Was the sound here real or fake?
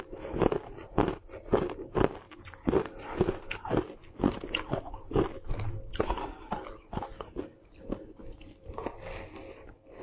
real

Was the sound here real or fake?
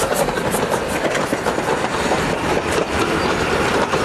fake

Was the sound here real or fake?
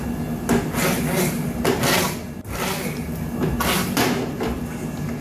real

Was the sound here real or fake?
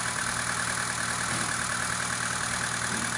real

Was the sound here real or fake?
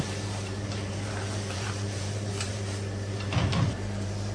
fake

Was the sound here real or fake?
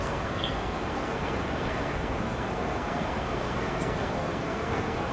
fake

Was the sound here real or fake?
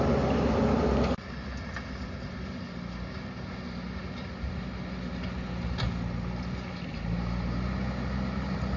real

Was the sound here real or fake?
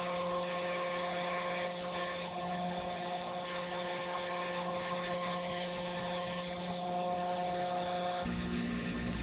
fake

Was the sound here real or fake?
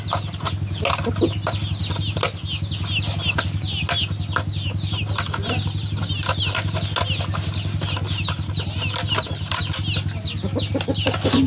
real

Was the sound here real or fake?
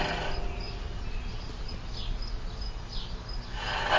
real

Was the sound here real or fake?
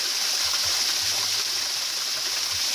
real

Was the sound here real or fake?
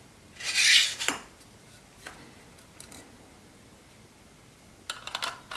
real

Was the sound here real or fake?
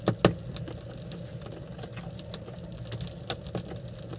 real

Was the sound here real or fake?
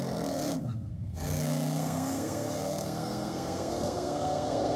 fake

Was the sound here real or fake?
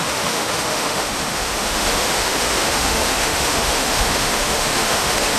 fake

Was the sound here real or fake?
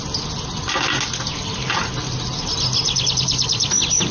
real